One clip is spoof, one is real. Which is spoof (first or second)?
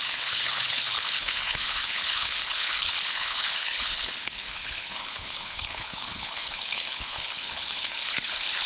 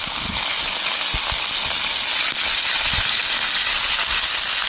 first